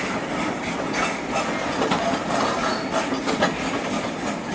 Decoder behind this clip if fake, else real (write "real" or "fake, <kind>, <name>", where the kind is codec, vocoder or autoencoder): real